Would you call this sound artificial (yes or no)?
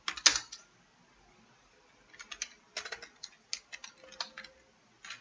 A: no